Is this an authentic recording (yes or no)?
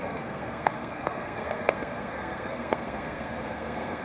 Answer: no